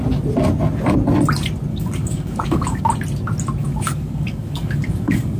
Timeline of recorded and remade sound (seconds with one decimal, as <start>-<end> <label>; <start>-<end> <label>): 0.0-1.7 recorded; 1.7-2.8 remade; 2.8-3.6 recorded; 3.6-5.4 remade